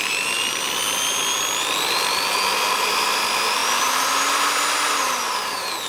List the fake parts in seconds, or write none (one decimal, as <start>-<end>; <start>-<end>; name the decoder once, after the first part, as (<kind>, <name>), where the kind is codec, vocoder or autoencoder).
none